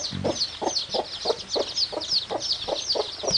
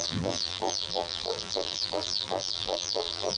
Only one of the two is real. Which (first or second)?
first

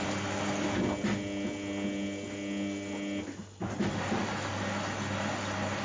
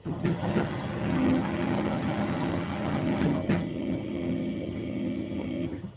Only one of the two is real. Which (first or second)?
first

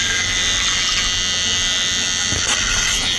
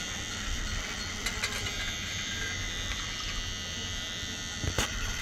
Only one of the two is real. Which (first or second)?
first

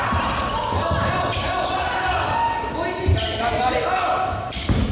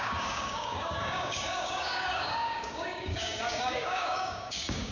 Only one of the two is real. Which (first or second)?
first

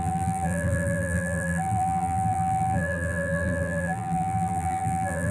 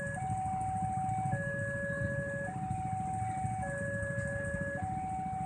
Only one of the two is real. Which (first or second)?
second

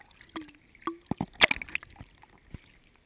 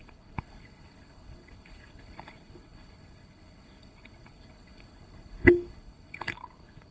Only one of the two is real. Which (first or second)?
first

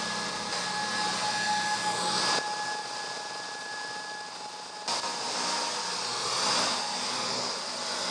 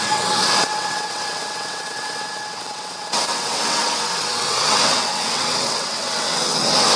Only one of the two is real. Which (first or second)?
first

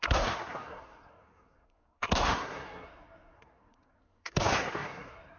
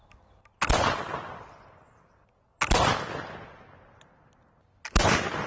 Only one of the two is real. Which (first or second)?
second